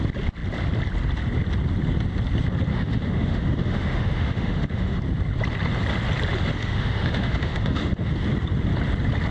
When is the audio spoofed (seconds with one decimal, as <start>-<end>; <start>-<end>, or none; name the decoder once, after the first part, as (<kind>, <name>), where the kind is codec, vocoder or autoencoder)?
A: 2.7-5.0 (autoencoder, DAC-VAE); 6.6-8.1